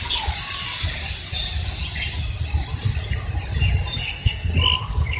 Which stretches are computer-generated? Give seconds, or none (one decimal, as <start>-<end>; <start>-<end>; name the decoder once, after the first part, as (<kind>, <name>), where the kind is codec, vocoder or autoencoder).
4.0-4.5 (codec, SNAC)

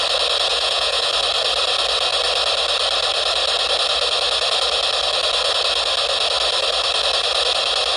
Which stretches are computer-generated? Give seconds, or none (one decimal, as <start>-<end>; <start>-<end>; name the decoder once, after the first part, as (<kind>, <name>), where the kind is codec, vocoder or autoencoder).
0.5-1.1 (vocoder, Vocos)

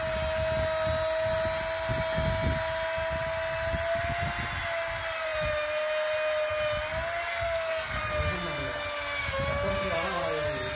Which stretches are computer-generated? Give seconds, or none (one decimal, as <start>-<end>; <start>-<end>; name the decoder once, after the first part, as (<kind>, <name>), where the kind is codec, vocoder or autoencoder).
7.3-8.0 (codec, SNAC)

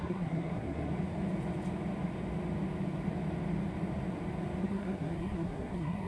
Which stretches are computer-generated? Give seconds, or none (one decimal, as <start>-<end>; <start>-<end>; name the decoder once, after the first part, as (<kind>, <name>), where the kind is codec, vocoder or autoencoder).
0.0-0.9 (codec, SNAC); 4.6-6.1

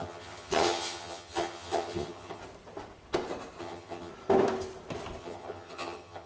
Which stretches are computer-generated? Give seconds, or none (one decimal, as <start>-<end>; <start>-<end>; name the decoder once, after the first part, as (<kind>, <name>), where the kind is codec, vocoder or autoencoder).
0.0-2.4 (vocoder, HiFi-GAN); 3.6-4.1; 5.2-6.3

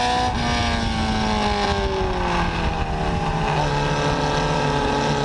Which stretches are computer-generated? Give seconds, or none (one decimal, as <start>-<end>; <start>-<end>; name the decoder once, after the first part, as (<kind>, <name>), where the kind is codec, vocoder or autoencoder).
none

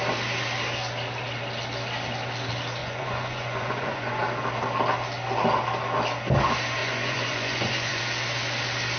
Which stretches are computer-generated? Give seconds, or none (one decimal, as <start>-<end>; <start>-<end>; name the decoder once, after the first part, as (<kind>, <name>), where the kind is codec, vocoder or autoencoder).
2.8-4.2 (vocoder, Vocos); 6.8-8.0